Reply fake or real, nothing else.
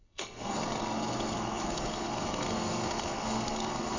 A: fake